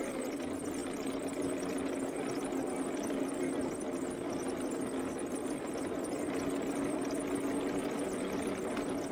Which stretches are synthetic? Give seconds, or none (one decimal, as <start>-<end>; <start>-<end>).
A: none